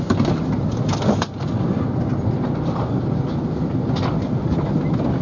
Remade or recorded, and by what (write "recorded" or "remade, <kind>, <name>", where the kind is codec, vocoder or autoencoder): recorded